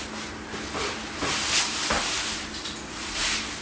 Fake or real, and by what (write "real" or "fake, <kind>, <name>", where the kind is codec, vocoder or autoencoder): real